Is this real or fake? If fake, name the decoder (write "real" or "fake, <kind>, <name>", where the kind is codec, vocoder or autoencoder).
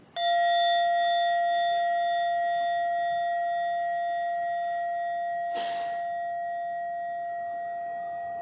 real